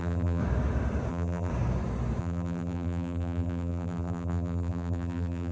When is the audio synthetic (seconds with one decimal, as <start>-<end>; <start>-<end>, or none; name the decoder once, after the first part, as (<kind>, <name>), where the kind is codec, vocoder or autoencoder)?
0.0-0.4 (vocoder, BigVGAN v2); 1.1-1.5; 2.2-5.5